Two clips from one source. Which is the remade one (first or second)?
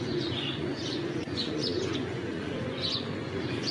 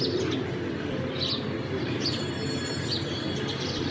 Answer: first